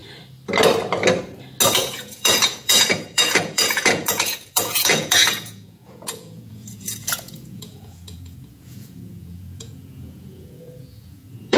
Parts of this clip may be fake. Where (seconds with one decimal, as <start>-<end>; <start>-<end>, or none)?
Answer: 1.7-11.6